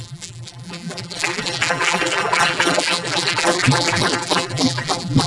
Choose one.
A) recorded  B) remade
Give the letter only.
B